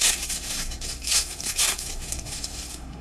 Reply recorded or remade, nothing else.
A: remade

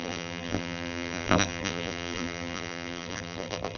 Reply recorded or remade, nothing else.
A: remade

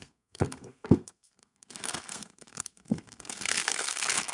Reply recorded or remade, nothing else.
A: remade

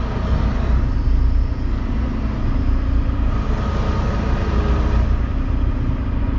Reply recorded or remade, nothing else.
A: recorded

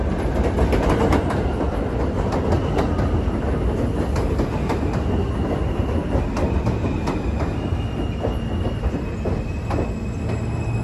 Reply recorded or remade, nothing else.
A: recorded